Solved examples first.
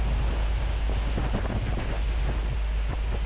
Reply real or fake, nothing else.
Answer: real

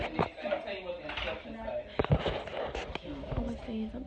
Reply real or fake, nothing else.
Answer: real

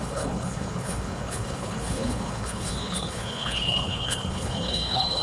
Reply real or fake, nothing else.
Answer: fake